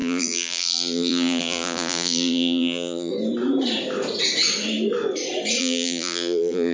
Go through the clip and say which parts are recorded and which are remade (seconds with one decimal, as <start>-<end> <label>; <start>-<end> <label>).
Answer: 0.0-3.1 remade; 3.1-5.6 recorded; 5.6-6.7 remade